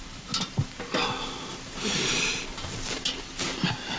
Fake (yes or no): no